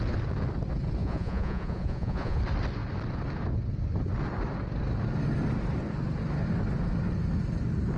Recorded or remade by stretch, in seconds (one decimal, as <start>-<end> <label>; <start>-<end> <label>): 0.0-1.0 recorded; 1.0-2.4 remade; 2.4-8.0 recorded